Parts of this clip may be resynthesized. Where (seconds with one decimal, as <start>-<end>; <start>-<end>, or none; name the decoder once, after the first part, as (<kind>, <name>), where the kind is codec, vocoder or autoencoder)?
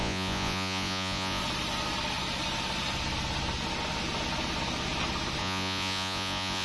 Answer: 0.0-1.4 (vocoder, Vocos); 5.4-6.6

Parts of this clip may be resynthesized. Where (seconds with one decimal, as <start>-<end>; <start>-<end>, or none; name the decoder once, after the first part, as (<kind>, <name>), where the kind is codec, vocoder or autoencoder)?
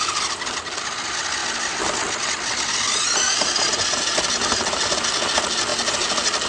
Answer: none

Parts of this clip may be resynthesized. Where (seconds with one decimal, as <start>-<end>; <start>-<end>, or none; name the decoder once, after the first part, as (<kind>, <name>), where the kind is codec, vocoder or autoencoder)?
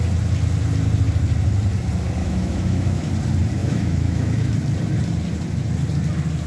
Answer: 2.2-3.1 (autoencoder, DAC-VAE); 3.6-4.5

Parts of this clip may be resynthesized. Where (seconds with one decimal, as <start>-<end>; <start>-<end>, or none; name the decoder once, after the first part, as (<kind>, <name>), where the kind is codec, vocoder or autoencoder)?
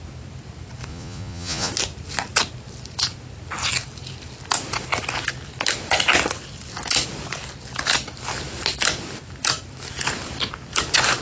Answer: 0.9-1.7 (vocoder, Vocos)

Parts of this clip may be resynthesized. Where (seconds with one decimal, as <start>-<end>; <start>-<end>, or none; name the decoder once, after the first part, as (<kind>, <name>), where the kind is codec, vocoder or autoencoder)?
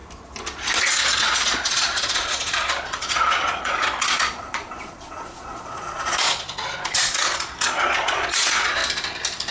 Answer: 0.8-8.8 (vocoder, Vocos)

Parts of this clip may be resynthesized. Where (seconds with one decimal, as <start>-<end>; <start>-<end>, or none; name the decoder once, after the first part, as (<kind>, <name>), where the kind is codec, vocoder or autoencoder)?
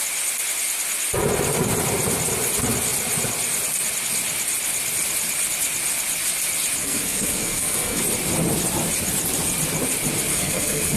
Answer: 6.8-8.0 (codec, SNAC); 10.3-11.0